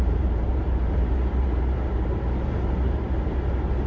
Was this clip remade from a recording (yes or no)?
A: yes